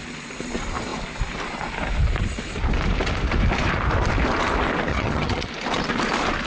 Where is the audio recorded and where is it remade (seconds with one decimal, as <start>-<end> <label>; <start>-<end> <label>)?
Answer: 0.0-4.9 recorded; 4.9-5.5 remade; 5.5-6.5 recorded